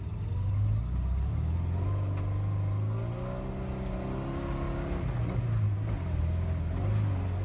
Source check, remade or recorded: recorded